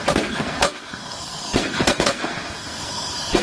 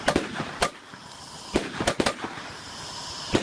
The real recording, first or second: second